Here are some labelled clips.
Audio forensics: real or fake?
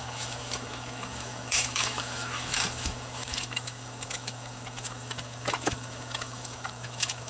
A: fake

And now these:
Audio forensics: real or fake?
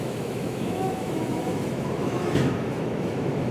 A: fake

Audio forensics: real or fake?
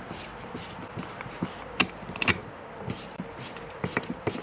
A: real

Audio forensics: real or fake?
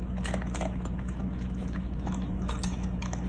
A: fake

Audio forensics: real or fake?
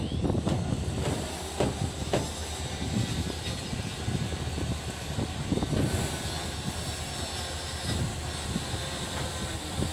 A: real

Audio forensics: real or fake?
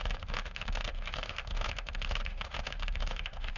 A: fake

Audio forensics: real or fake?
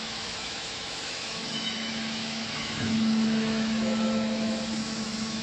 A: fake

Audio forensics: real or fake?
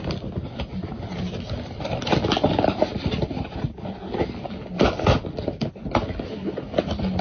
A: real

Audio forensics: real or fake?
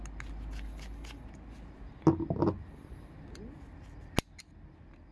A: real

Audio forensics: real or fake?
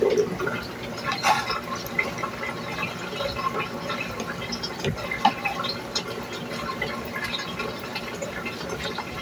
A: real